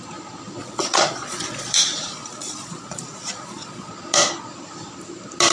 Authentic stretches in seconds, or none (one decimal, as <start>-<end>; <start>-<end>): 0.0-0.6; 3.9-5.5